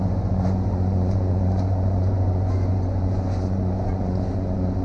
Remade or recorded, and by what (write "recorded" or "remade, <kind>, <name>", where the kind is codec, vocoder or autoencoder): remade, vocoder, Vocos